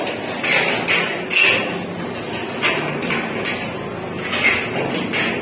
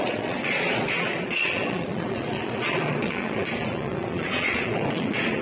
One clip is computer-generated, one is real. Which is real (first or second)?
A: first